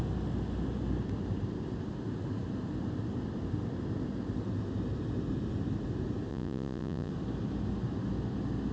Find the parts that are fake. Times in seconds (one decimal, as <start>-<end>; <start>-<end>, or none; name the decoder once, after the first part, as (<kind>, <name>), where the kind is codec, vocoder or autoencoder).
6.3-7.1 (vocoder, Vocos)